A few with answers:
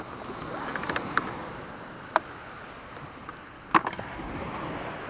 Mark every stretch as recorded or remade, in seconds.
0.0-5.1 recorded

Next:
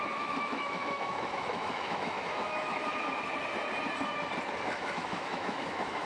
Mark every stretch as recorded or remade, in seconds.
0.0-2.8 remade; 2.8-4.5 recorded; 4.5-6.1 remade

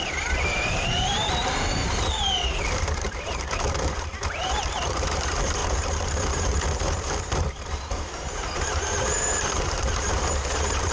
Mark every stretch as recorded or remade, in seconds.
0.0-10.9 remade

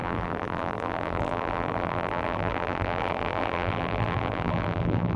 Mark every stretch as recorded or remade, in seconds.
0.0-5.2 remade